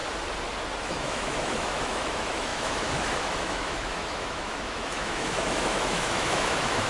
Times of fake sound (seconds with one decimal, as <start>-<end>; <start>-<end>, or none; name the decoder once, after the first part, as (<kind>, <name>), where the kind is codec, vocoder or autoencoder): 0.8-6.9 (autoencoder, DAC-VAE)